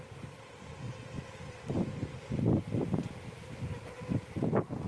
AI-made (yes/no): no